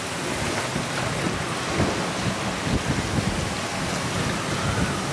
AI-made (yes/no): no